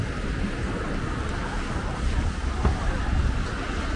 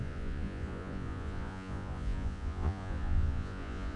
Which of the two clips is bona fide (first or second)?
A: first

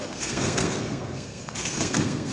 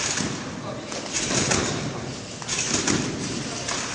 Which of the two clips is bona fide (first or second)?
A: second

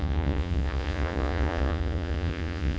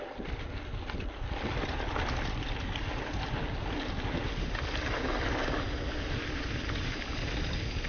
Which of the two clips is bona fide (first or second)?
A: second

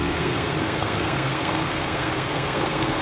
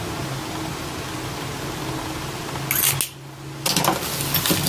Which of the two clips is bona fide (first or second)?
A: second